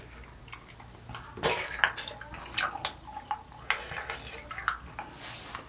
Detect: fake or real real